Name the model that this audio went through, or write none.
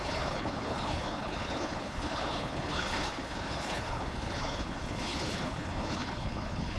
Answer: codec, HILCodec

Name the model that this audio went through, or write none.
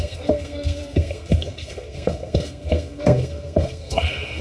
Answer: codec, SNAC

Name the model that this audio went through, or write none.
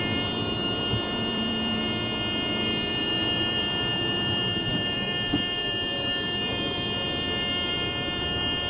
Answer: vocoder, BigVGAN v2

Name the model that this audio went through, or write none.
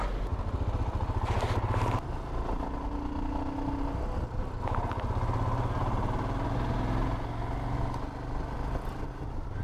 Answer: none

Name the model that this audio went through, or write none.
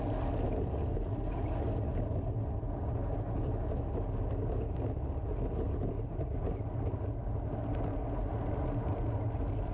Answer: none